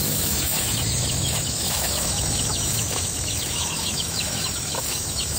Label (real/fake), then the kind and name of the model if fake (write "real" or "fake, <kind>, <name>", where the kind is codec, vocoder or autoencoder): fake, autoencoder, DAC-VAE